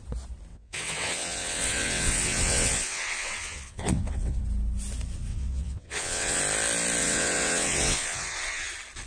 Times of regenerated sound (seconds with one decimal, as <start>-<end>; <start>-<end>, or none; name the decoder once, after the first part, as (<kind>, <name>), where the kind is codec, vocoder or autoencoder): 0.5-4.4 (vocoder, WaveNeXt); 5.3-6.4; 7.0-8.7